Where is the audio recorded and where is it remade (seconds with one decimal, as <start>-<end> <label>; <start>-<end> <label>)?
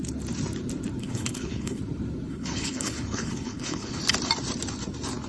0.0-1.0 recorded; 1.0-1.8 remade; 1.8-2.3 recorded; 2.3-4.0 remade; 4.0-5.3 recorded